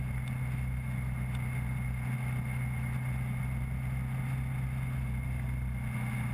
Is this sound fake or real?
real